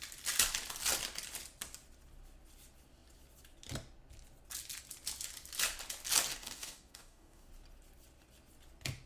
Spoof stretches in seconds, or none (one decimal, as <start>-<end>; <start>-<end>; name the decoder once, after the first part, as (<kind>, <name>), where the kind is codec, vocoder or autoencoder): 6.3-7.5 (codec, DAC)